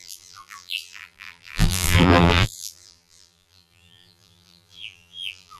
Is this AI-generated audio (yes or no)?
yes